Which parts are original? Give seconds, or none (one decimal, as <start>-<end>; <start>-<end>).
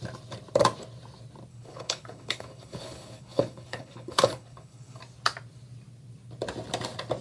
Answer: 0.0-1.5; 5.0-7.2